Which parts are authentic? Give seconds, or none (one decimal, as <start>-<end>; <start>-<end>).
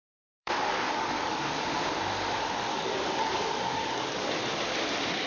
1.5-2.7; 4.3-5.3